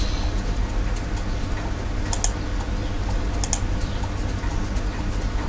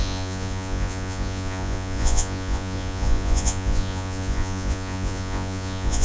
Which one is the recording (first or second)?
first